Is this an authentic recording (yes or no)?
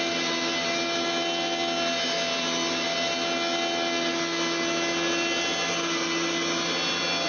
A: yes